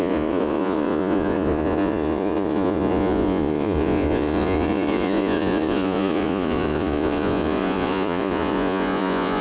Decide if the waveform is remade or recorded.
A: remade